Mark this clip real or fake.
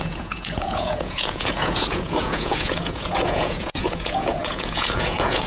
fake